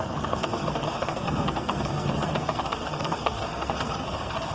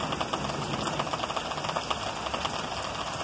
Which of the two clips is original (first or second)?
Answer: second